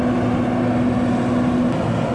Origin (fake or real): real